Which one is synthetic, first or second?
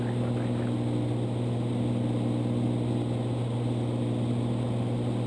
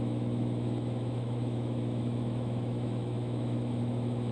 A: second